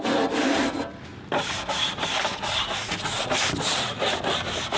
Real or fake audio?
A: real